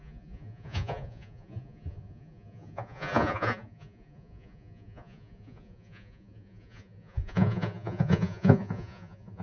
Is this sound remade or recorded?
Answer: remade